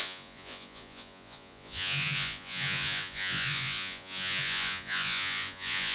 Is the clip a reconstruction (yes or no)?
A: yes